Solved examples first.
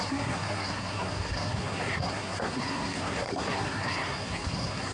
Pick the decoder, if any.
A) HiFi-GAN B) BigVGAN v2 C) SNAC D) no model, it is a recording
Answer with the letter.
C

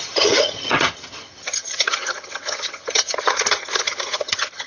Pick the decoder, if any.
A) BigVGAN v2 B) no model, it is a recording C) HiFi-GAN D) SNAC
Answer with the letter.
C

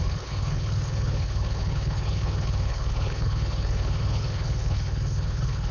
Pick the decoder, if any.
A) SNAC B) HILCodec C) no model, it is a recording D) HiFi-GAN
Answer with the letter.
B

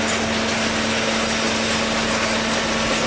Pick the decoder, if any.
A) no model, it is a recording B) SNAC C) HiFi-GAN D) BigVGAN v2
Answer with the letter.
A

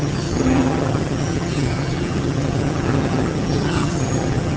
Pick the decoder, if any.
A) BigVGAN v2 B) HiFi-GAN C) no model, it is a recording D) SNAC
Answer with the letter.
B